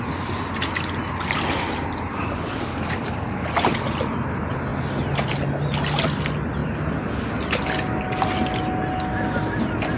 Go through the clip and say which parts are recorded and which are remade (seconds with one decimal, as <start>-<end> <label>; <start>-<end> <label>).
0.0-2.1 recorded; 2.1-3.5 remade; 3.5-10.0 recorded